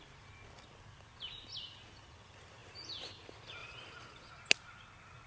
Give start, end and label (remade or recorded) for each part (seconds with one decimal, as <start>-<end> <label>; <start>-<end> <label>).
0.0-3.6 recorded; 3.6-4.3 remade; 4.3-5.3 recorded

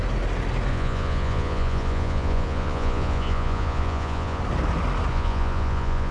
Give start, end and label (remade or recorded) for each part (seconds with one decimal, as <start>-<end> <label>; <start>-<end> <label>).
0.0-0.7 recorded; 0.7-4.4 remade; 4.4-5.1 recorded; 5.1-6.1 remade

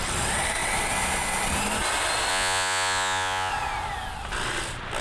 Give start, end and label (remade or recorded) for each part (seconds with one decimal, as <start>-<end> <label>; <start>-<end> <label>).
0.0-2.3 recorded; 2.3-3.5 remade; 3.5-5.0 recorded

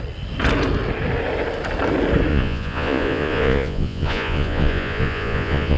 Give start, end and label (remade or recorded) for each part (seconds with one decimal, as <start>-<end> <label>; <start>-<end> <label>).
0.0-2.3 recorded; 2.3-5.8 remade

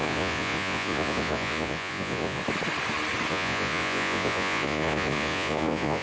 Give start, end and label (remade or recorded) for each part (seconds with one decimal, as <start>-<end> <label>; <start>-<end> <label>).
0.0-2.4 remade; 2.4-3.3 recorded; 3.3-6.0 remade

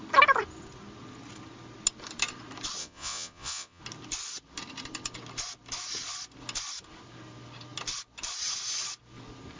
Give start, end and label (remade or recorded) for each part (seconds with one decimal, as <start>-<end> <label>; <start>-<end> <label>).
0.0-2.8 recorded; 2.8-3.8 remade; 3.8-9.6 recorded